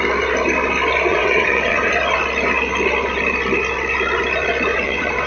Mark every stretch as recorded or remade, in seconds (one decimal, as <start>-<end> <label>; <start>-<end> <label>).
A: 0.0-1.1 recorded; 1.1-1.9 remade; 1.9-4.7 recorded; 4.7-5.3 remade